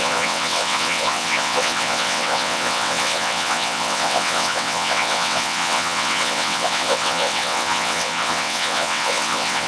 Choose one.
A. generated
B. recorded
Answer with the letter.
A